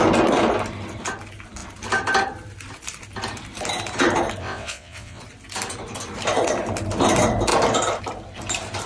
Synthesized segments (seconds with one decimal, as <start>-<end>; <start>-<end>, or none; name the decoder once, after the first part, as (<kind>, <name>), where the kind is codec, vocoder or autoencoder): 4.4-5.2 (vocoder, WaveNeXt)